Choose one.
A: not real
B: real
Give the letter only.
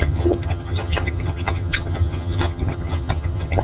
A